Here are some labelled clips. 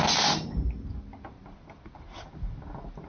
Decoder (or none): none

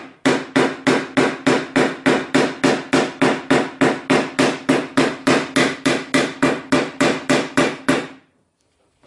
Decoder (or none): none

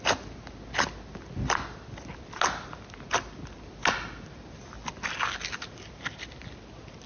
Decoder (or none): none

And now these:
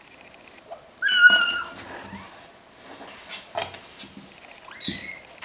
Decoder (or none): none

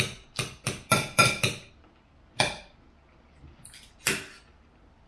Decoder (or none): none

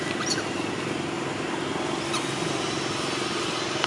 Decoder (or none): none